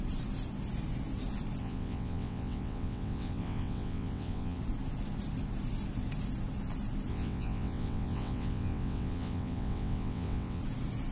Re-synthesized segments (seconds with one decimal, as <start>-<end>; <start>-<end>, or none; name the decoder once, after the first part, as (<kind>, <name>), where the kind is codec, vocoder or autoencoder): 1.6-4.6 (vocoder, WaveNeXt); 7.1-10.6